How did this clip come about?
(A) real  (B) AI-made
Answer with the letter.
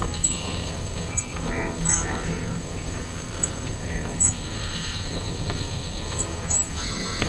B